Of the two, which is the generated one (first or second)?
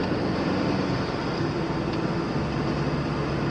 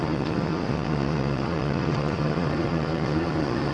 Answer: second